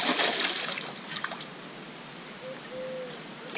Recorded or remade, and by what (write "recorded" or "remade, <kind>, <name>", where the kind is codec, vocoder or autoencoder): recorded